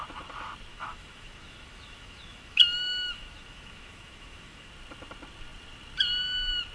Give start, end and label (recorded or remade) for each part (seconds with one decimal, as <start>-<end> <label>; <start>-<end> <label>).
0.0-0.7 recorded; 0.7-4.7 remade; 4.7-6.7 recorded